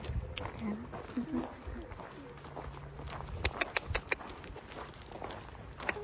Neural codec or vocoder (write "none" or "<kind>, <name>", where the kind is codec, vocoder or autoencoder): none